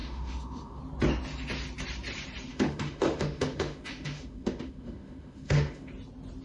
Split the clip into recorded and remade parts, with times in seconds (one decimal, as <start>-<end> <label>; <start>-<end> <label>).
0.0-0.8 remade; 0.8-2.5 recorded; 2.5-5.9 remade; 5.9-6.4 recorded